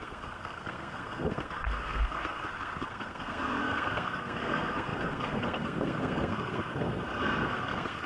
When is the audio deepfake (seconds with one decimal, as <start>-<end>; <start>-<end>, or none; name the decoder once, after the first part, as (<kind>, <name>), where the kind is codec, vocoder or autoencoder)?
0.0-8.1 (codec, SNAC)